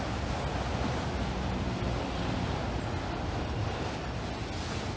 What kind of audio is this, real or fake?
real